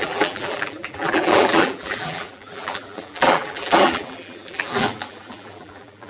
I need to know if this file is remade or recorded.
remade